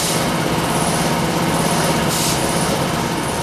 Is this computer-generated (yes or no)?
no